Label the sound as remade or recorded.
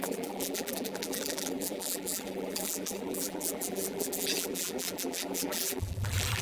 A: remade